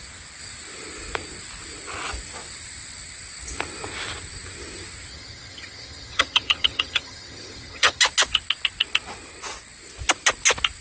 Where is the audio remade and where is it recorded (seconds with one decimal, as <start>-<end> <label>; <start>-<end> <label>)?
0.0-5.1 recorded; 5.1-8.0 remade; 8.0-10.8 recorded